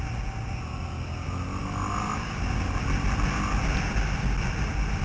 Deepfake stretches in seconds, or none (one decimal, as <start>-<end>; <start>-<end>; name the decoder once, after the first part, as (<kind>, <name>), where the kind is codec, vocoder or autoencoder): none